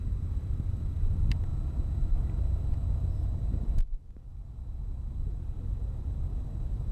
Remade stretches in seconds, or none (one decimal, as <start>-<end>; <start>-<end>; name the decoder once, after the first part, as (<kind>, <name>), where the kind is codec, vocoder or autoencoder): 0.0-1.5 (vocoder, BigVGAN v2); 3.1-4.3; 5.3-6.9